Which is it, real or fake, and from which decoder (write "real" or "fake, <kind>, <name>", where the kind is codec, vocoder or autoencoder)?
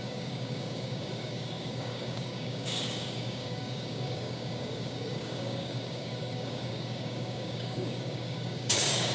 fake, codec, DAC